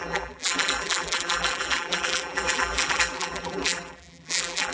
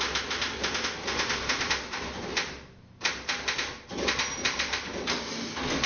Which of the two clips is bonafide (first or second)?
second